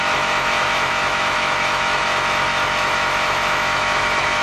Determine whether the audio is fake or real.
fake